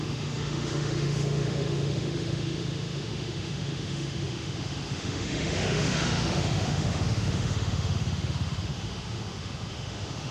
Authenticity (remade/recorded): remade